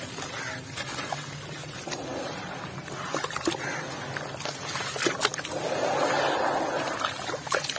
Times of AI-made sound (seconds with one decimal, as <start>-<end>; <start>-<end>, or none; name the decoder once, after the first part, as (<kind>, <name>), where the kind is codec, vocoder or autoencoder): none